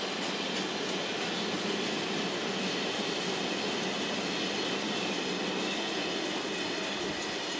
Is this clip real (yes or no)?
yes